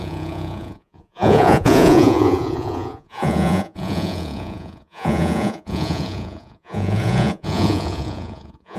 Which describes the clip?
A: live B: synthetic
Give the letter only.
B